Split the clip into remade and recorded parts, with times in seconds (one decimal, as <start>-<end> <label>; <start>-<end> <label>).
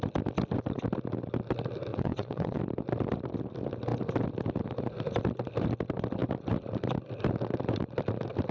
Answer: 0.0-1.9 recorded; 1.9-2.6 remade; 2.6-8.5 recorded